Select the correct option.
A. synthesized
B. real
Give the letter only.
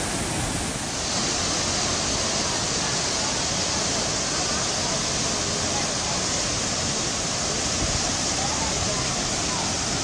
B